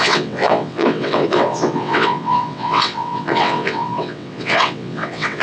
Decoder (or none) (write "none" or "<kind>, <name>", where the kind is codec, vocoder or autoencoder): vocoder, WaveNeXt